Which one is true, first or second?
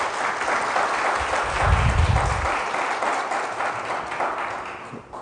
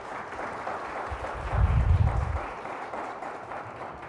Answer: first